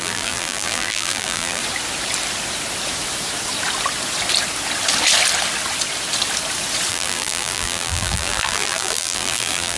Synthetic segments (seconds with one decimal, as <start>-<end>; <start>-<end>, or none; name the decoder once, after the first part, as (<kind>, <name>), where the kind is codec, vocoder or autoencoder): 0.0-1.6 (vocoder, BigVGAN v2); 6.9-9.8